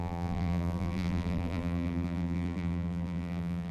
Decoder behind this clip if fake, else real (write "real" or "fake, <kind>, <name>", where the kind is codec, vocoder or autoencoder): fake, vocoder, BigVGAN v2